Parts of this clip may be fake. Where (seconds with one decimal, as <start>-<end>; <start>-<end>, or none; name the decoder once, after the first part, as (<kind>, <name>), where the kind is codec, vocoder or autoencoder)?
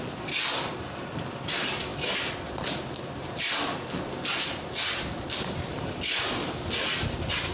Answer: none